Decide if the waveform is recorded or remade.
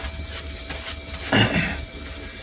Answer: recorded